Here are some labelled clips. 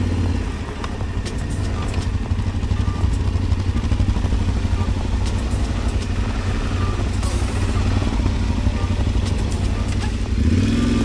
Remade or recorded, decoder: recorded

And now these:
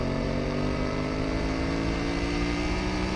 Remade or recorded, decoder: remade, vocoder, BigVGAN v2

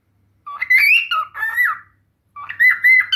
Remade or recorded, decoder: recorded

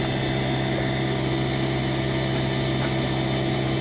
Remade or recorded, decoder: recorded